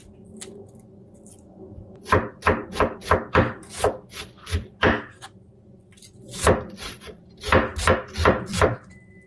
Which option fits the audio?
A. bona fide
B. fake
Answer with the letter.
A